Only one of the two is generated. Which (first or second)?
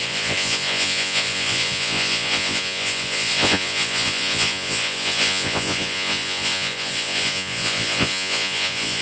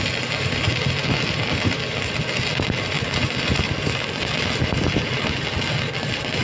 first